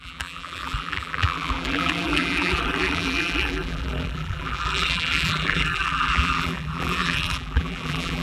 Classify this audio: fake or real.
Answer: fake